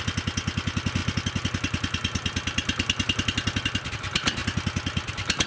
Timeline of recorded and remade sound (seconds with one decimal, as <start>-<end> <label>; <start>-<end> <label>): 0.0-5.5 recorded